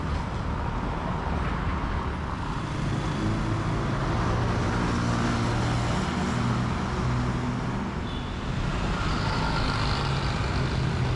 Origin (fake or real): real